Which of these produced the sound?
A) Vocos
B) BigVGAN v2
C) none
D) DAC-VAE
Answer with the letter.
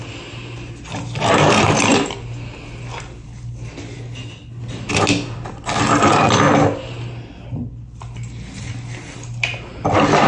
C